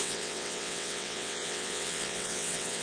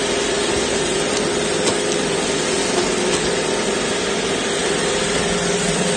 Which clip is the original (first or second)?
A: second